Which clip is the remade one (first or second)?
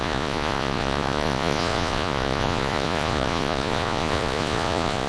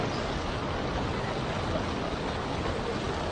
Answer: first